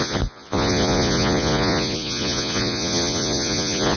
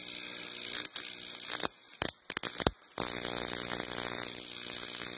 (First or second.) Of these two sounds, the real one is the second